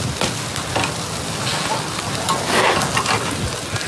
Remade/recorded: recorded